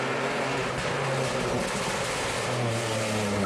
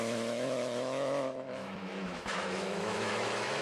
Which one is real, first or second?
first